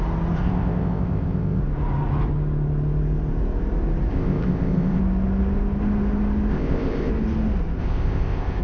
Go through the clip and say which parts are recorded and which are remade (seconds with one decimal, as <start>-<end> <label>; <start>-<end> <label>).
0.0-0.4 recorded; 0.4-1.6 remade; 1.6-4.1 recorded; 4.1-5.0 remade; 5.0-6.5 recorded; 6.5-7.1 remade; 7.1-7.8 recorded; 7.8-8.6 remade